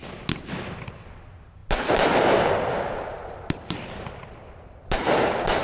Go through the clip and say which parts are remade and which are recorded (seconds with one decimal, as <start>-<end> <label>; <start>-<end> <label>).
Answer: 0.0-5.6 recorded